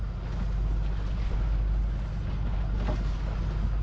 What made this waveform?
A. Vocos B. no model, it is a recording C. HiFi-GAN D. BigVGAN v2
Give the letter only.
B